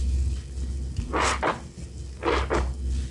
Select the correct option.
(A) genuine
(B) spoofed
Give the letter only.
A